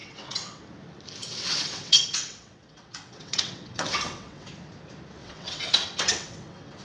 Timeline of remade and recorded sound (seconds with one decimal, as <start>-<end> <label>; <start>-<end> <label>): 0.0-0.6 remade; 0.6-1.2 recorded; 1.2-4.5 remade; 4.5-5.2 recorded; 5.2-6.8 remade